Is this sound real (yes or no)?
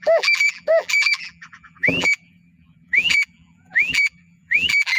no